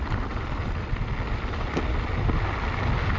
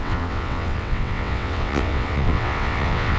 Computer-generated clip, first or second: second